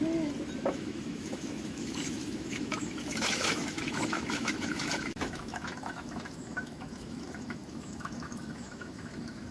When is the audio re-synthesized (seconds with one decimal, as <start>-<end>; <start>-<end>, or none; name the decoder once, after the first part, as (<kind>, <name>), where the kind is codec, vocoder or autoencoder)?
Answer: 0.7-9.5 (autoencoder, DAC-VAE)